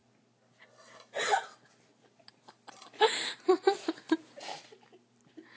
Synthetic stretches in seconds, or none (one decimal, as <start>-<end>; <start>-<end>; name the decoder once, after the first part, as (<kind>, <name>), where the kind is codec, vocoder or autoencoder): none